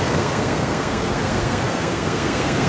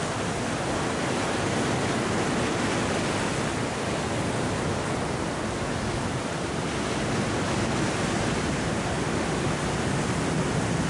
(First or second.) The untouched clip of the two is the second